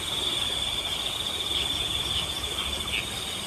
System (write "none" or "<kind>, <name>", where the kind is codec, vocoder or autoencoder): none